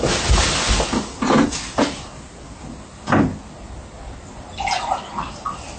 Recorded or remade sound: recorded